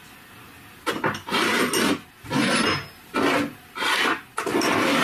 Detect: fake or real real